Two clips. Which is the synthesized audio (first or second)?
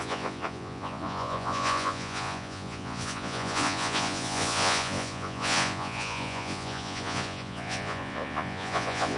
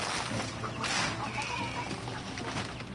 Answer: first